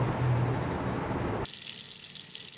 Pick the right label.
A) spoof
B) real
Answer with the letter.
B